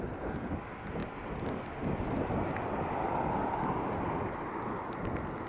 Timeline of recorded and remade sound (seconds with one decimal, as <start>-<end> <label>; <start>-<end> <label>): 0.0-5.5 recorded

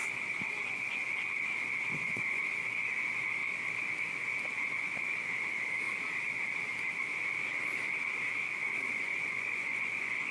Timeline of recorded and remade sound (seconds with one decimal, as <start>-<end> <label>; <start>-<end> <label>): 0.0-0.7 recorded; 0.7-1.1 remade; 1.1-1.9 recorded; 1.9-3.4 remade; 3.4-4.5 recorded; 4.5-5.2 remade; 5.2-8.9 recorded; 8.9-10.3 remade